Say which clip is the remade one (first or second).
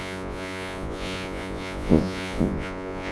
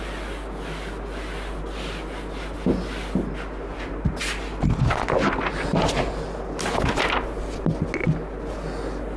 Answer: first